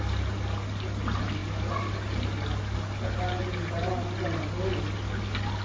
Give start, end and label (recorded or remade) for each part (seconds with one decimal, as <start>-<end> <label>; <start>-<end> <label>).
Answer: 0.0-5.6 recorded